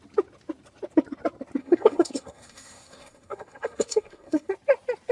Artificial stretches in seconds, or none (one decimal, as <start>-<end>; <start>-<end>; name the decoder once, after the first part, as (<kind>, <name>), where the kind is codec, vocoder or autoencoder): 1.6-4.5 (codec, SNAC)